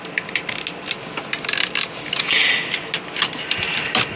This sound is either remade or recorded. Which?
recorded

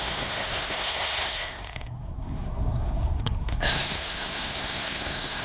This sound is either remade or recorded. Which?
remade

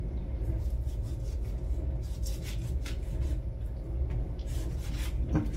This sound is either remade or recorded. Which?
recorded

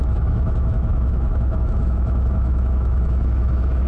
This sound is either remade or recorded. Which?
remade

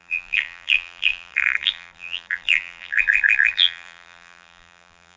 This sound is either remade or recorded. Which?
remade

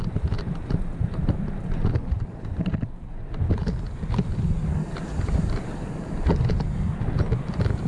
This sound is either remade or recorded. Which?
recorded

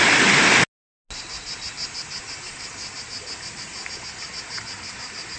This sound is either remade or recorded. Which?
recorded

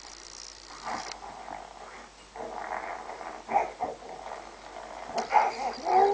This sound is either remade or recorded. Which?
recorded